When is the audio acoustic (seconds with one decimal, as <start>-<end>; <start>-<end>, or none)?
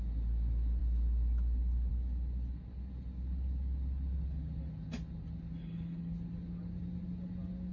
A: 0.0-5.6; 6.1-7.7